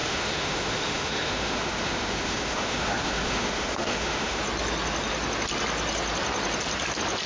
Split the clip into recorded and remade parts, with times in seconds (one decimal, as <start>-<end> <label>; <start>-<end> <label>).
0.0-4.4 remade; 4.4-7.3 recorded